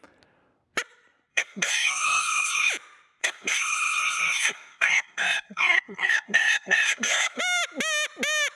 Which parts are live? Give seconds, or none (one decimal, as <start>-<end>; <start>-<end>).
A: 0.0-1.3; 2.7-3.2; 7.4-8.6